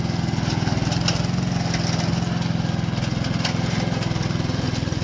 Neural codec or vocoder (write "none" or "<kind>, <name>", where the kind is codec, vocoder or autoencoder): none